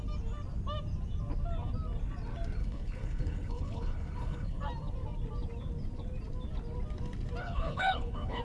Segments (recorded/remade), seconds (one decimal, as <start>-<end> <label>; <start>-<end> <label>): 0.0-2.6 recorded; 2.6-4.6 remade; 4.6-7.4 recorded; 7.4-8.4 remade